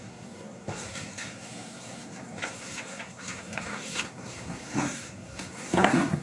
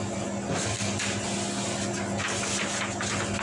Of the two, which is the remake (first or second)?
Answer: first